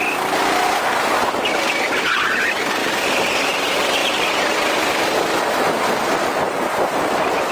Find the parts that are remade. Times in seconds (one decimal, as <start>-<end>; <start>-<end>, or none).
2.8-3.5; 4.0-5.0